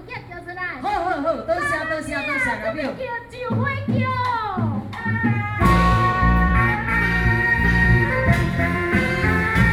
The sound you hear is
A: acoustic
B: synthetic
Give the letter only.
B